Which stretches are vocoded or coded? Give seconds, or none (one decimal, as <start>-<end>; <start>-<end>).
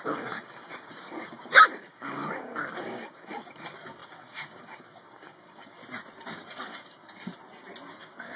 0.0-5.8; 6.3-7.3; 7.9-8.4